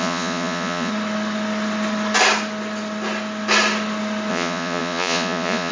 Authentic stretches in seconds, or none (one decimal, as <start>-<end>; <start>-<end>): 0.9-4.3